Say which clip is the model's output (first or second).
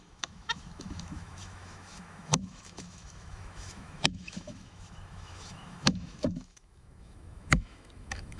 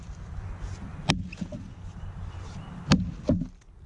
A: first